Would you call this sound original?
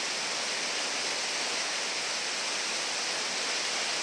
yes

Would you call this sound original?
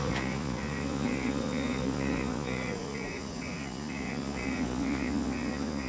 no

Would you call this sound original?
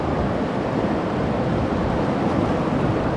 yes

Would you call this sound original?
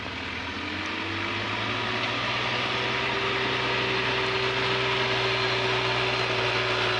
yes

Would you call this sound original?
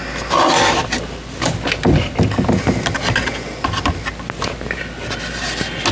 yes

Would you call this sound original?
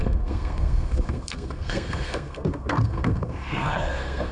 no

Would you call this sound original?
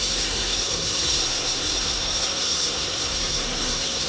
no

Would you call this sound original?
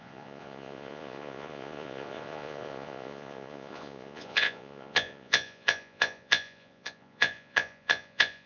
no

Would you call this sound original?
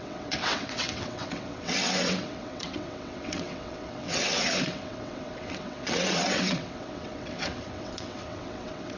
no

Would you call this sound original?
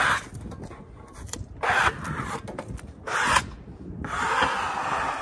yes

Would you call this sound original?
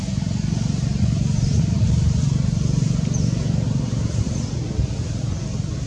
yes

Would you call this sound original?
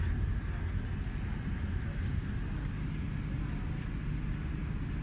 yes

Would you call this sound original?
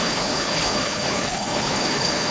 no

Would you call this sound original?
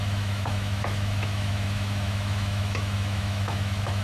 no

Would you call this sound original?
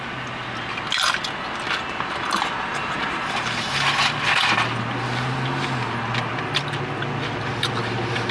yes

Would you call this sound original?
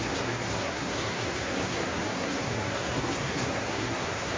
no